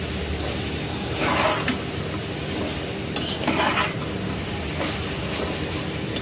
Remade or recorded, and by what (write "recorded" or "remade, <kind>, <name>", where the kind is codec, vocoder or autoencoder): recorded